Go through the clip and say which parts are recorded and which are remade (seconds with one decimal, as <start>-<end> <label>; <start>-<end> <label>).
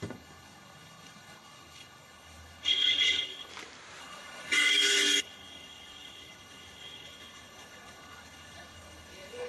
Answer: 0.0-3.5 remade; 3.5-4.0 recorded; 4.0-9.5 remade